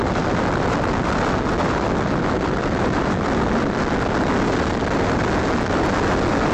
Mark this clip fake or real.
real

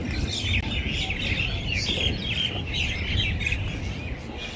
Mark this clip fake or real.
real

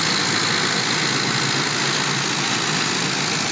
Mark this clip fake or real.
real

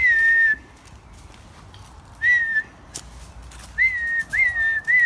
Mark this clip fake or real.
real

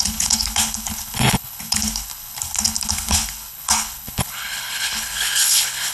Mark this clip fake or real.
fake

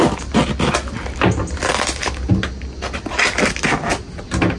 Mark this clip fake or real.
real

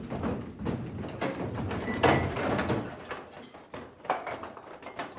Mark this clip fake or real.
real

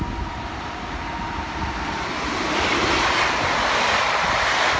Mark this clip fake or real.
real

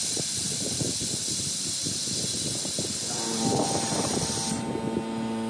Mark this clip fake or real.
real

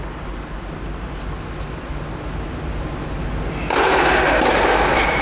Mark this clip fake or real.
real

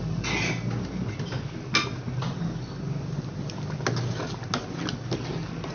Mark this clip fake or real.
real